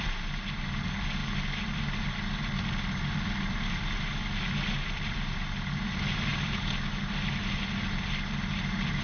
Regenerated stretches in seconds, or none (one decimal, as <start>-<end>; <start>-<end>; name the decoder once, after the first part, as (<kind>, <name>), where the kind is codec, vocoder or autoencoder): none